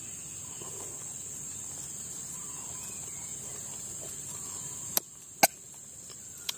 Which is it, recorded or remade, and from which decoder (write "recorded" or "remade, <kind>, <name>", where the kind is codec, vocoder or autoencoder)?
recorded